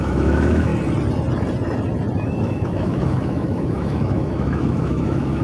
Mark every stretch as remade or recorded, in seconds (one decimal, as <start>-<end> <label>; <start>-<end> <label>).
0.0-0.7 remade; 0.7-2.4 recorded; 2.4-5.4 remade